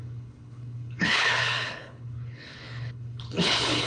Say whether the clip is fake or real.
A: fake